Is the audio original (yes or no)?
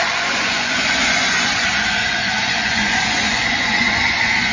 no